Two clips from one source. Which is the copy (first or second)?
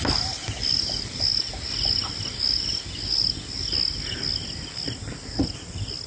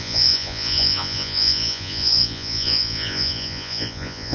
second